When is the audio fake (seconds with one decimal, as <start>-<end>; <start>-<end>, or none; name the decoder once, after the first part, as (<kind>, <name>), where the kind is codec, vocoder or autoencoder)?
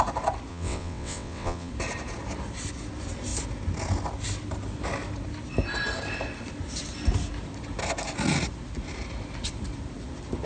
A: 0.5-1.7 (vocoder, WaveNeXt)